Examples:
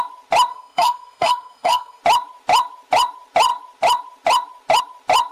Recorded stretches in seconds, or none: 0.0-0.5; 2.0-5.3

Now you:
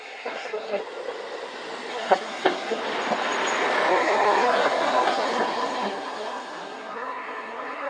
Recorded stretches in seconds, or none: 0.8-1.9; 2.8-3.9

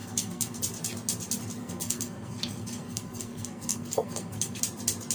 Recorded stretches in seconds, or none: 0.6-1.6; 4.6-5.1

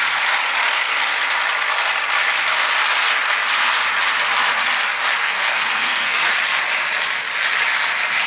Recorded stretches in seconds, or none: 0.0-5.2; 6.3-8.3

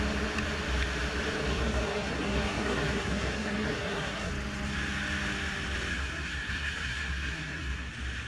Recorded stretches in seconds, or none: 0.0-1.5; 4.3-5.9; 7.9-8.3

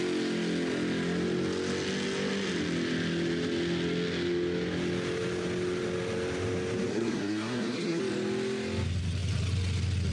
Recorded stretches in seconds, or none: 0.0-6.9; 8.0-10.1

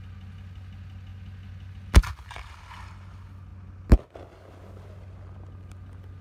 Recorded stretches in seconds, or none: 0.0-6.2